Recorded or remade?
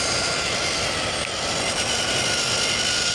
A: recorded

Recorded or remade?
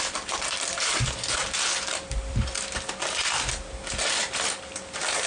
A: recorded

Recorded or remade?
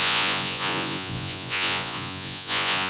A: remade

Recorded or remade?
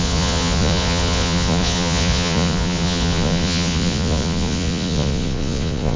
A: remade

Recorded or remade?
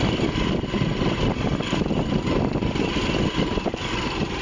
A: recorded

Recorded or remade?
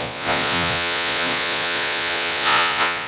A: remade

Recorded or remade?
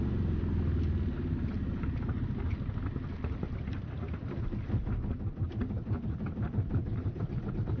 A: recorded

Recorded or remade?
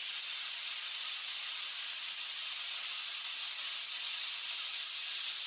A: remade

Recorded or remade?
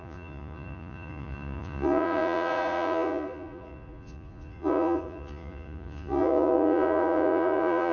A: remade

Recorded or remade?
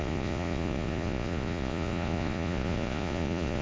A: remade